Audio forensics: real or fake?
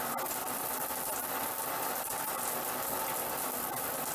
real